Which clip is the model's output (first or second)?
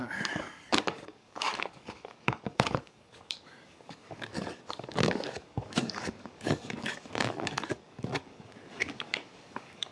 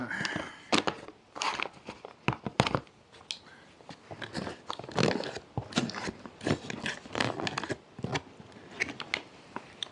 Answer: first